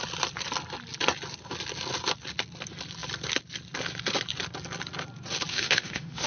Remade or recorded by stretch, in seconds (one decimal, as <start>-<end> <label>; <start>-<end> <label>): 0.0-5.5 recorded; 5.5-6.3 remade